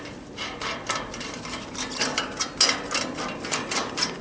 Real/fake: real